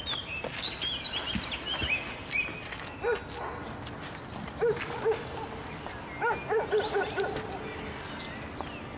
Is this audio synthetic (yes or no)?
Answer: no